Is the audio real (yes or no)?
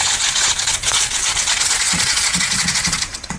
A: no